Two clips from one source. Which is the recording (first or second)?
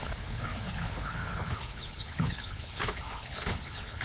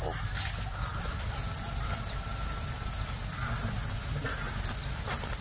second